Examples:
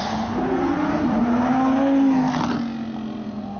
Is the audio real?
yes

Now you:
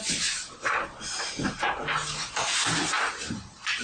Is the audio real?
yes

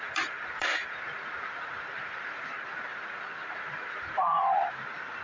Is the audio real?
no